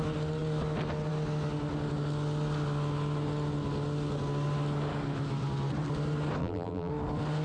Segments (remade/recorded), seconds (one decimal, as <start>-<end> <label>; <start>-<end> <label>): 0.0-6.4 recorded; 6.4-6.9 remade; 6.9-7.4 recorded